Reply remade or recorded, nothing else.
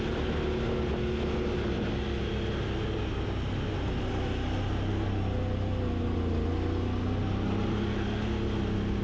recorded